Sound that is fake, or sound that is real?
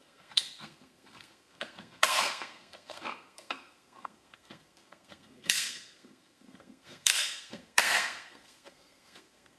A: fake